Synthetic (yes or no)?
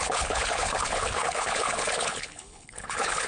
yes